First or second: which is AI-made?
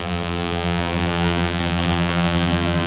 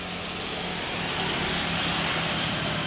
first